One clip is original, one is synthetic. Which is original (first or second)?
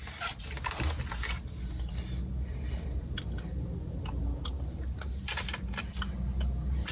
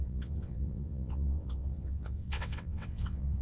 first